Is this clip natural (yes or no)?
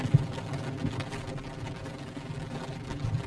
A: yes